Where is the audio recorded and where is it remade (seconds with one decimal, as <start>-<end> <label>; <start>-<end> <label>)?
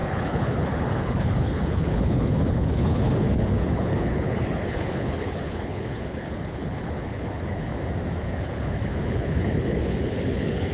0.0-7.7 remade; 7.7-8.2 recorded; 8.2-10.7 remade